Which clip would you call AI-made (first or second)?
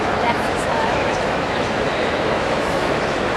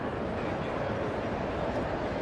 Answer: first